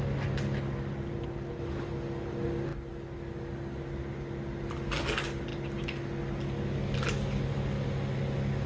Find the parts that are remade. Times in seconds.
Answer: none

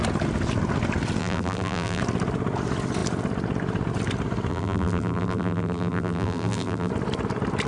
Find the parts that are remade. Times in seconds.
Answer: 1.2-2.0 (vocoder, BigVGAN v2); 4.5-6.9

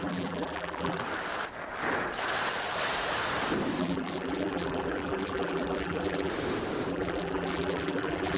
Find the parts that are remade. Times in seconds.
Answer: 0.0-1.0 (vocoder, BigVGAN v2); 3.8-6.3; 6.9-8.4

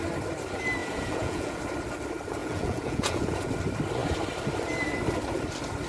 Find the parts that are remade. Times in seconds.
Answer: 0.8-1.6 (vocoder, Vocos); 2.4-3.5

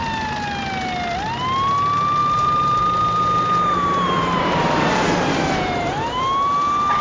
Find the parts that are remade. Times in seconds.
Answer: 2.2-6.2 (vocoder, BigVGAN v2)

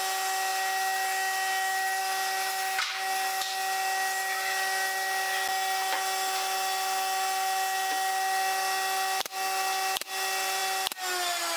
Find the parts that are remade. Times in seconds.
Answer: none